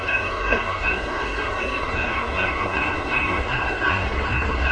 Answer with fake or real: fake